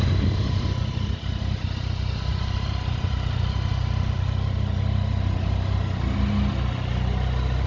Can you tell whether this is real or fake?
real